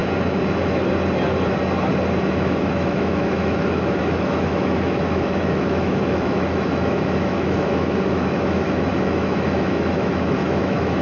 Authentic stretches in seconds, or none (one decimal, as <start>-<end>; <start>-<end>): 0.0-2.3